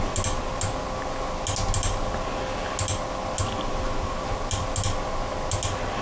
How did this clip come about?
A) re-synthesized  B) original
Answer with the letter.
B